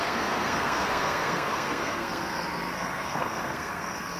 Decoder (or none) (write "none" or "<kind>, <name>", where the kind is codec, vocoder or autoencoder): codec, SNAC